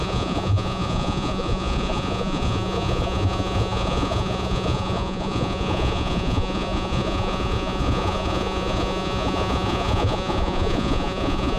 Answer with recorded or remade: remade